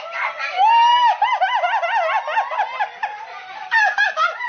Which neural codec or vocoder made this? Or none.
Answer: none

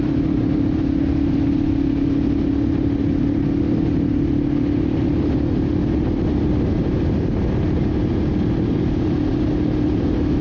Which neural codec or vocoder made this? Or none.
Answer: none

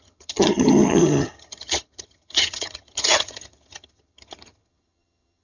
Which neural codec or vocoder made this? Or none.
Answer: vocoder, HiFi-GAN